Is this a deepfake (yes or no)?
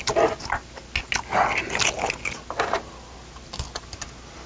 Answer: no